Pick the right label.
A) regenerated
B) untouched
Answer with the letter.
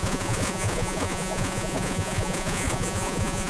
A